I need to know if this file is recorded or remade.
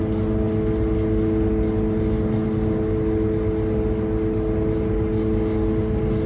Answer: recorded